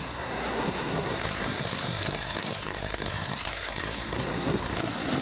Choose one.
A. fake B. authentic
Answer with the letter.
A